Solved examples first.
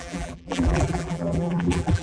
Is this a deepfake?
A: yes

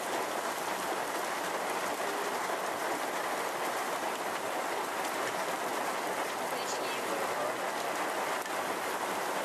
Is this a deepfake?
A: no